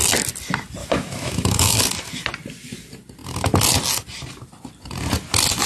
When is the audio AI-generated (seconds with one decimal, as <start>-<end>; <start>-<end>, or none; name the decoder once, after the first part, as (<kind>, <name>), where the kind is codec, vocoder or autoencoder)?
0.8-1.8 (autoencoder, DAC-VAE)